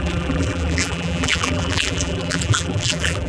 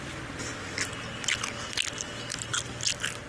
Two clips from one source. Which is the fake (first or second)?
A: first